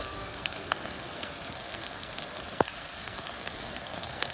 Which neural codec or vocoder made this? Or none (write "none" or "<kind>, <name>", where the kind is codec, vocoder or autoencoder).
codec, SNAC